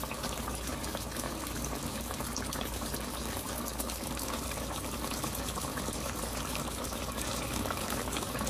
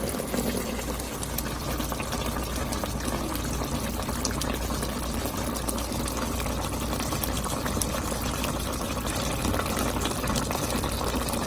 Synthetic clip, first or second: first